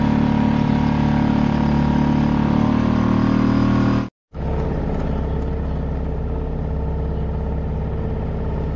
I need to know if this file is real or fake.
real